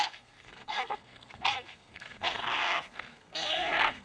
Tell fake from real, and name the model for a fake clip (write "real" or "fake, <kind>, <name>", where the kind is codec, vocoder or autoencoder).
fake, codec, SNAC